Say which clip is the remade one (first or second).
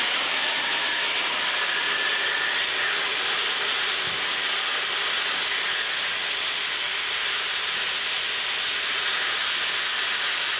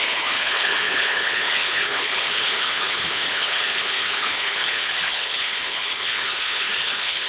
second